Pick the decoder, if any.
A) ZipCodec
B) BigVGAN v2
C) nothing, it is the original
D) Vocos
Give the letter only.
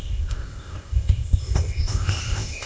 A